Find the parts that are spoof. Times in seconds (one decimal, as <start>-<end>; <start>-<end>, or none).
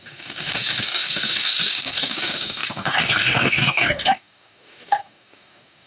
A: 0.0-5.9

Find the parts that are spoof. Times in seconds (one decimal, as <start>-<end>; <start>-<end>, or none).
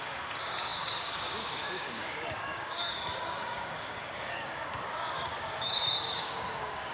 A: 0.0-6.9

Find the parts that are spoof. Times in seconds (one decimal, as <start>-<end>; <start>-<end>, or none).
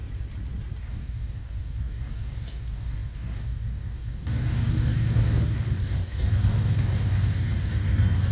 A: 0.8-8.3